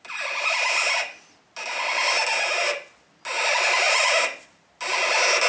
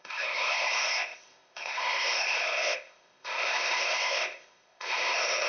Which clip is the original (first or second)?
first